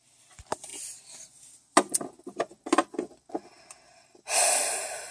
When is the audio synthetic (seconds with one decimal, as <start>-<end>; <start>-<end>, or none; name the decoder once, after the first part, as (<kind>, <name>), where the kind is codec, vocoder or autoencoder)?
none